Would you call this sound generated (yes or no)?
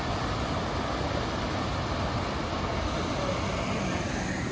no